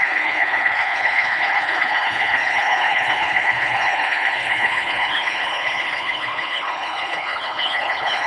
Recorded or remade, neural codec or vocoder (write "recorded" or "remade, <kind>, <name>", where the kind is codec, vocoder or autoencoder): remade, codec, HILCodec